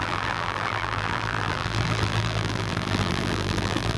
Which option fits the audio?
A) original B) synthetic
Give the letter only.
B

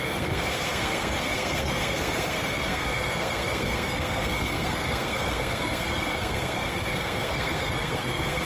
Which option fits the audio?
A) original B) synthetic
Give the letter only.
B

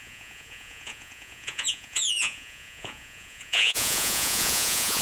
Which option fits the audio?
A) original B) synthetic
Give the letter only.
B